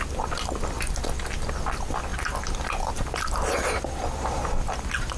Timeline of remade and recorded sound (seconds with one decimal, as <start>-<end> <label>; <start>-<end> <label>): 0.0-5.2 recorded